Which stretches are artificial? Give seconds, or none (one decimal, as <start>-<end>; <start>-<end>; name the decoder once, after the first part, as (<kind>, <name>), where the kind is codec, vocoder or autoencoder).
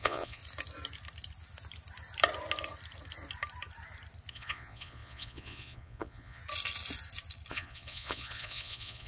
0.0-0.4 (vocoder, Vocos); 4.3-6.4; 7.5-9.1